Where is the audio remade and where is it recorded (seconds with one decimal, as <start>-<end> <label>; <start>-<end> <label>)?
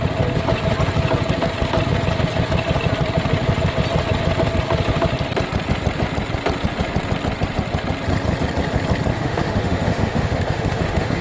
0.0-9.1 recorded; 9.1-11.2 remade